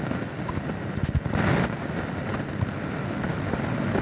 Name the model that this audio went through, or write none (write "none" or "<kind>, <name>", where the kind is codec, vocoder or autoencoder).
none